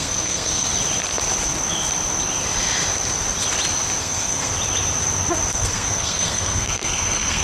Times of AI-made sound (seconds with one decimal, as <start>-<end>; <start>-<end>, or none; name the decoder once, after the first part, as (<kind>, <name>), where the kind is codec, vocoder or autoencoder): 0.0-0.7 (codec, SNAC); 4.0-4.5; 5.5-7.4